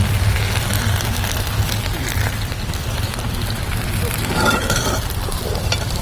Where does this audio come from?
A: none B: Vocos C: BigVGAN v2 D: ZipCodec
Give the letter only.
C